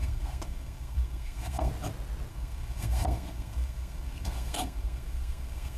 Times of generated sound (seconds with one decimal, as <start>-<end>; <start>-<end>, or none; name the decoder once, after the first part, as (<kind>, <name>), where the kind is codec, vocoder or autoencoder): 0.0-1.7 (codec, SNAC); 2.3-5.8